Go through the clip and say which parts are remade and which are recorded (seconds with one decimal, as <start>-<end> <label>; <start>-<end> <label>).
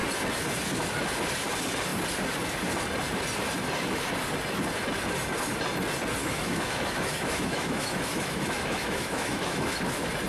0.0-6.2 recorded; 6.2-9.8 remade; 9.8-10.3 recorded